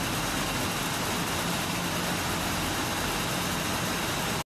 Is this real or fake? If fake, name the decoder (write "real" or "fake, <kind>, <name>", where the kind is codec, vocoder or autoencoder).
real